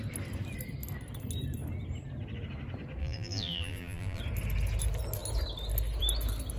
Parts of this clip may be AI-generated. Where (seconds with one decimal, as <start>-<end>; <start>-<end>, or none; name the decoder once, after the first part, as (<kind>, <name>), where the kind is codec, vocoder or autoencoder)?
3.0-4.2 (vocoder, BigVGAN v2)